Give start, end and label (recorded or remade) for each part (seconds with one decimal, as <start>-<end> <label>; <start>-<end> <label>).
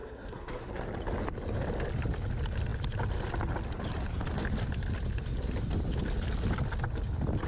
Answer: 0.0-0.8 remade; 0.8-7.5 recorded